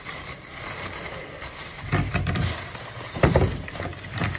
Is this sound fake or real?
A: fake